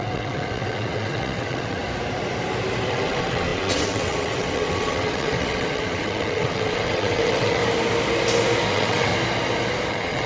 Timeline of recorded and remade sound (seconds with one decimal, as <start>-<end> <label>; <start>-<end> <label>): 0.0-1.8 remade; 1.8-2.9 recorded; 2.9-7.6 remade; 7.6-8.7 recorded; 8.7-9.1 remade; 9.1-9.9 recorded; 9.9-10.3 remade